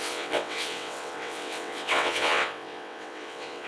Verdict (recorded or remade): remade